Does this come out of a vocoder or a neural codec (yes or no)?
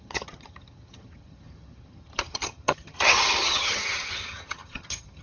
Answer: yes